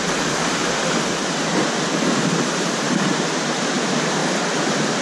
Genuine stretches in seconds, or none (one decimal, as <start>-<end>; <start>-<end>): 0.6-2.2; 4.2-5.0